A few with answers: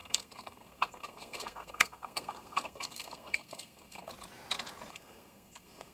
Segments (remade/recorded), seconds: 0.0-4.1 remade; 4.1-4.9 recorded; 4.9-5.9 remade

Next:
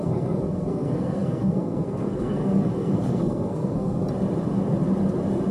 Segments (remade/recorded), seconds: 0.0-4.0 remade; 4.0-5.5 recorded

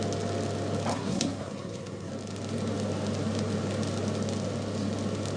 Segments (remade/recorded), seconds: 0.0-0.9 recorded; 0.9-2.1 remade; 2.1-5.4 recorded

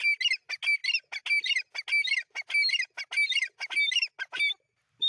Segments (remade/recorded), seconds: 0.0-5.1 recorded

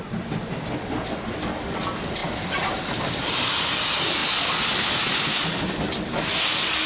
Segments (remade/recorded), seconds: 0.0-6.9 recorded

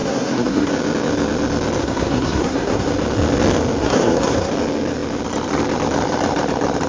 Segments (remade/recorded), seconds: 0.0-0.7 remade; 0.7-1.8 recorded; 1.8-2.9 remade; 2.9-3.8 recorded; 3.8-4.5 remade; 4.5-6.9 recorded

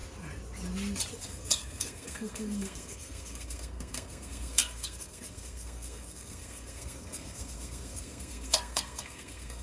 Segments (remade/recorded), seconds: 0.0-1.2 recorded; 1.2-9.6 remade